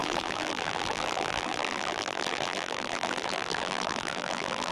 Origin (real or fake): fake